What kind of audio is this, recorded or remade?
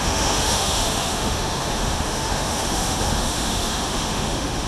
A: remade